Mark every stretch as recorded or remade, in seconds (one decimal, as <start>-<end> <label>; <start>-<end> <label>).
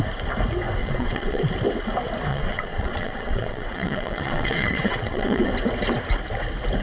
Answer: 0.0-0.8 recorded; 0.8-1.4 remade; 1.4-2.3 recorded; 2.3-5.5 remade; 5.5-6.8 recorded